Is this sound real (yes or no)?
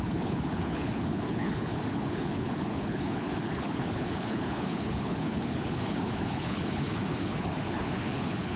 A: no